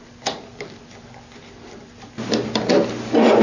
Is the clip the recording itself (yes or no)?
yes